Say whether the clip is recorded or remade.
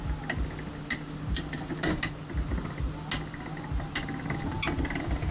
recorded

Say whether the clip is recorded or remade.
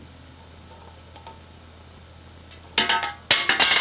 recorded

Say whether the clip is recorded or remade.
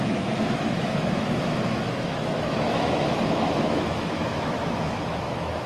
remade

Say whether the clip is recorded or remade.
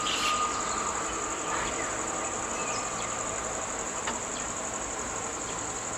recorded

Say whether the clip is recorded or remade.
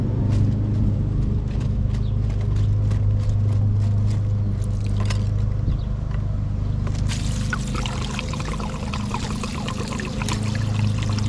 recorded